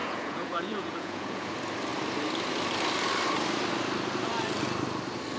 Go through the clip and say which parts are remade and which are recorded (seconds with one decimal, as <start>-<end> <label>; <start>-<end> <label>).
0.0-1.5 remade; 1.5-5.4 recorded